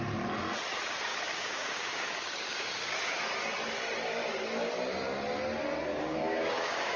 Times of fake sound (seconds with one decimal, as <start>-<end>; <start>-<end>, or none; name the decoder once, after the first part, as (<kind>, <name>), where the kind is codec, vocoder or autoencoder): 1.1-3.2 (codec, DAC); 5.9-7.0